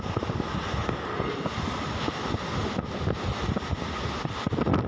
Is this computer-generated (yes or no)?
no